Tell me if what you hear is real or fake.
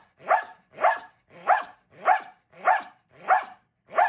real